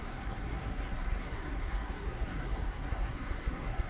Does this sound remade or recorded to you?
remade